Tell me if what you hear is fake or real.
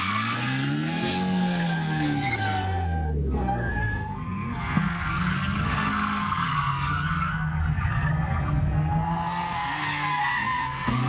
fake